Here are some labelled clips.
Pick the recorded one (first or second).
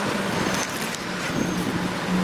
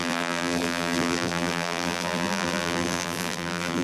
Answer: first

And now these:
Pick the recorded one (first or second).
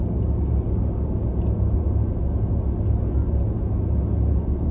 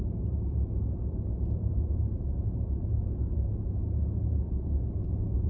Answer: first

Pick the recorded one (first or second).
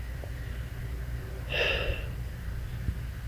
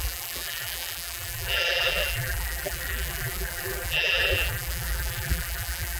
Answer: first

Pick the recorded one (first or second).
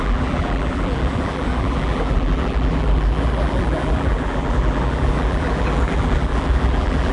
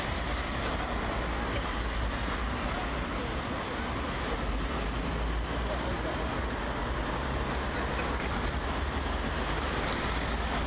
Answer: second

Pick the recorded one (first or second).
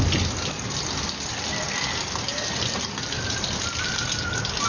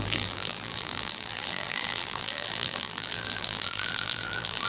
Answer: first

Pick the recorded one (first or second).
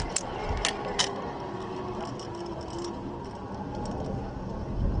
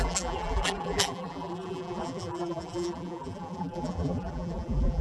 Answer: first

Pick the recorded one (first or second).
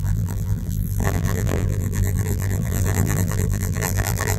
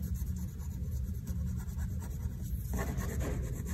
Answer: second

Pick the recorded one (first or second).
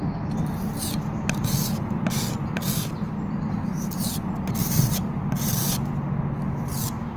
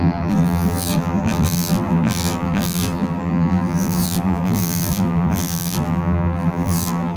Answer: first